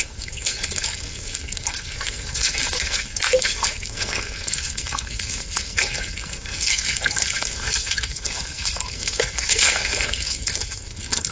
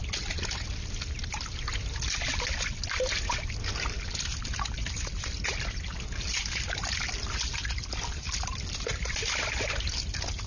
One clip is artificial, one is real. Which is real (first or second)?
second